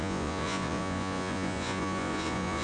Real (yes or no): no